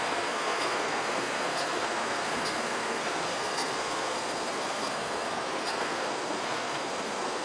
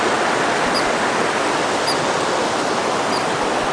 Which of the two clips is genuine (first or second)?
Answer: second